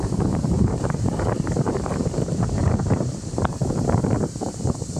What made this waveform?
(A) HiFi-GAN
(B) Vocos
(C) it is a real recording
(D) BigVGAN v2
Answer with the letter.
D